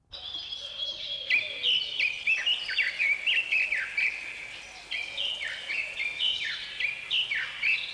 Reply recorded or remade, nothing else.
recorded